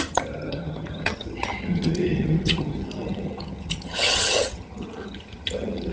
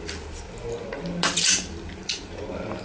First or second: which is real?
second